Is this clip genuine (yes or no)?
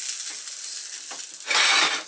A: yes